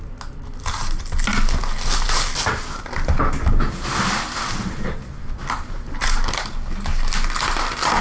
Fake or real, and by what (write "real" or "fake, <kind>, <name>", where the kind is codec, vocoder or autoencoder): real